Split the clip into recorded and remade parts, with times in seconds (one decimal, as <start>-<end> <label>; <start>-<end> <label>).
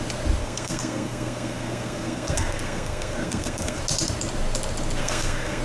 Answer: 0.0-0.4 recorded; 0.4-3.8 remade; 3.8-5.0 recorded; 5.0-5.6 remade